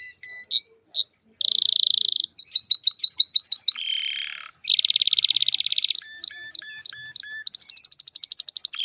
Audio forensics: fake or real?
real